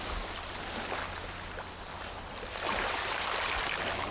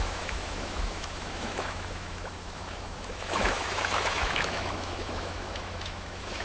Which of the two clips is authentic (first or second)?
first